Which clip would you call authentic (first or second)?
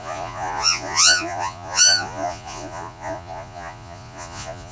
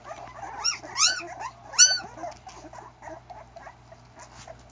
second